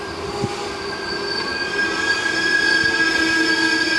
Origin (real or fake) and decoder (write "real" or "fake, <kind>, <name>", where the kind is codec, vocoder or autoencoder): real